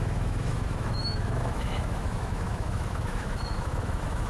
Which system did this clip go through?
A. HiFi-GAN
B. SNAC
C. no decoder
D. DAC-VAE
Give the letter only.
D